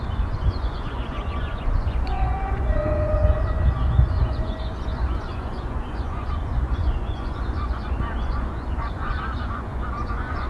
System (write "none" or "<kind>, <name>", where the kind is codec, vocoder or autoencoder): vocoder, Vocos